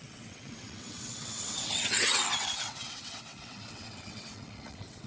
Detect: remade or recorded remade